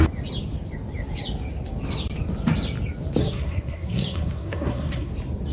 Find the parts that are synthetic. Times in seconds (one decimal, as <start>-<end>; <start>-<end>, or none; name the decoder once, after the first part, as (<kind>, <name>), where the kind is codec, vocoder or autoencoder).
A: 3.2-5.1 (codec, SNAC)